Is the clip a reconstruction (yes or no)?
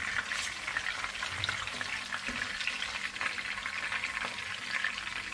no